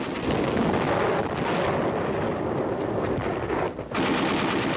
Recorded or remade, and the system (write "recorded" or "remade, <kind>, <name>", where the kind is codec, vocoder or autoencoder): recorded